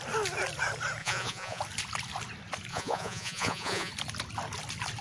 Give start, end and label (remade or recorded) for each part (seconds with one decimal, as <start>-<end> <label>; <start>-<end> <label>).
0.0-1.0 recorded; 1.0-1.6 remade; 1.6-2.7 recorded; 2.7-3.9 remade; 3.9-5.0 recorded